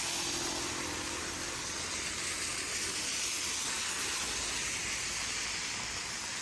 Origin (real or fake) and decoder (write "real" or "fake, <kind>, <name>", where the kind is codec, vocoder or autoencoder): real